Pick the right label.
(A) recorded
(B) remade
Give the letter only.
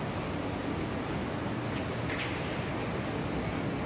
A